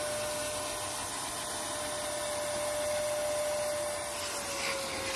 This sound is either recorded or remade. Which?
recorded